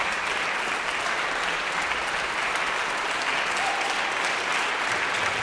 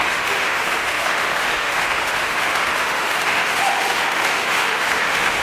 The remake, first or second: second